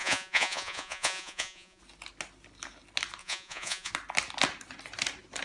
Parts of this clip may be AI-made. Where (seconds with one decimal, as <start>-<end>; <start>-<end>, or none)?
0.0-1.8; 3.2-3.9